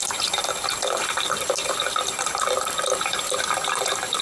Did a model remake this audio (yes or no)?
yes